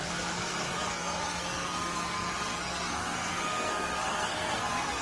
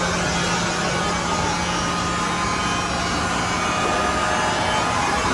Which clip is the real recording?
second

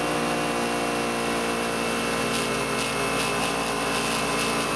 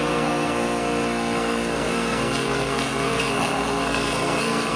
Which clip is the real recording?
first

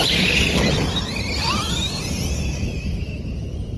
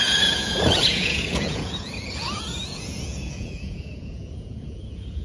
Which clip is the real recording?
first